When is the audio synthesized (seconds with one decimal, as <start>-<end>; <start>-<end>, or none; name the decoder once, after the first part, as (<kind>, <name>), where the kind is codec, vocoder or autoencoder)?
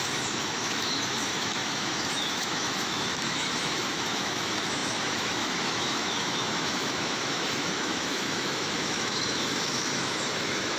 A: 0.0-10.8 (autoencoder, DAC-VAE)